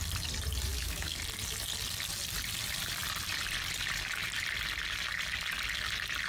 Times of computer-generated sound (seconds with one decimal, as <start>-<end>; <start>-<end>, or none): 0.7-1.2